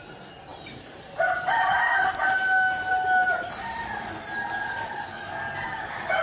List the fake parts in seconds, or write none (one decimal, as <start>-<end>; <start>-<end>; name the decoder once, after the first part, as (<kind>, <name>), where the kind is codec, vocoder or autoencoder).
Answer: 0.5-2.0 (vocoder, BigVGAN v2)